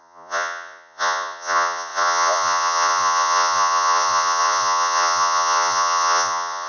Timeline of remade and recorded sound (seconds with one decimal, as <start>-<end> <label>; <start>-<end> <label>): 0.0-6.7 remade